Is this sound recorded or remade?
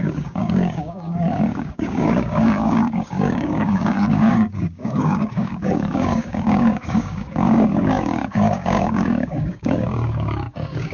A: remade